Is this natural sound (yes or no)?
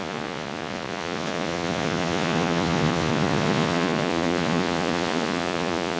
no